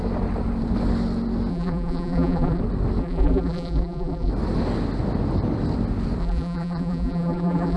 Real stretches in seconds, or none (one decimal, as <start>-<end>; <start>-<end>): 0.0-1.5; 2.6-3.0; 4.3-6.2